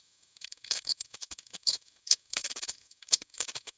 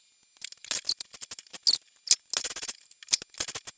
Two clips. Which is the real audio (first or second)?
second